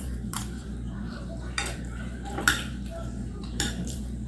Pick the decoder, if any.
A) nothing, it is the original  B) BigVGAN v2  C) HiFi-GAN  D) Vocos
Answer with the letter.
B